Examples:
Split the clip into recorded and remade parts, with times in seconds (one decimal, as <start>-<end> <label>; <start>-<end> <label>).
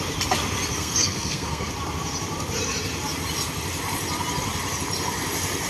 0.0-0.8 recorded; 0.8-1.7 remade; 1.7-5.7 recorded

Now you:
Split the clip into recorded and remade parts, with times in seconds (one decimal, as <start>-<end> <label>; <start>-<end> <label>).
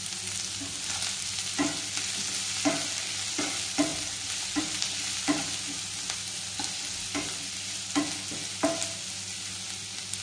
0.0-10.2 recorded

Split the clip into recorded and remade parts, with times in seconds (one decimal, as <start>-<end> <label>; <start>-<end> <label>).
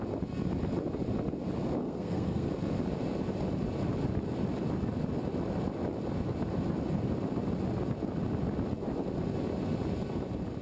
0.0-1.8 recorded; 1.8-2.5 remade; 2.5-10.6 recorded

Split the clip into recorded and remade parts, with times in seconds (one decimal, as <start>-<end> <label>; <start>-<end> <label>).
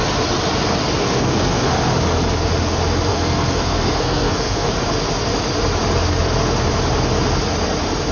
0.0-1.0 recorded; 1.0-1.7 remade; 1.7-3.1 recorded; 3.1-4.7 remade; 4.7-8.1 recorded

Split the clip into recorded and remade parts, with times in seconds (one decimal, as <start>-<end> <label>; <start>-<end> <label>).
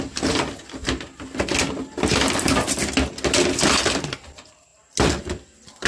0.0-5.9 recorded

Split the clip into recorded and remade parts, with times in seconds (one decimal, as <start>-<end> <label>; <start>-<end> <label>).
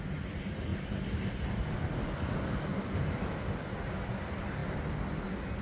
0.0-5.6 recorded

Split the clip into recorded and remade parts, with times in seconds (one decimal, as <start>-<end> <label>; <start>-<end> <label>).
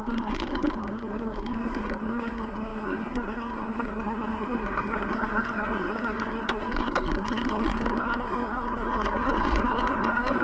0.0-10.4 remade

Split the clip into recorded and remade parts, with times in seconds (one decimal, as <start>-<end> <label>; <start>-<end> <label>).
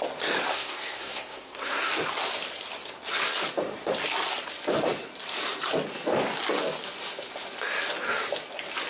0.0-0.5 recorded; 0.5-1.9 remade; 1.9-8.9 recorded